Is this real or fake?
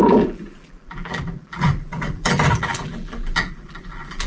fake